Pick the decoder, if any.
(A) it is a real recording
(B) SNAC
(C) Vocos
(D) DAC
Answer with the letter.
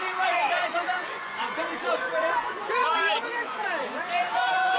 C